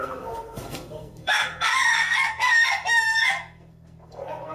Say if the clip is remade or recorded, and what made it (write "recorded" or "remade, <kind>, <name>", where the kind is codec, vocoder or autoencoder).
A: remade, codec, SNAC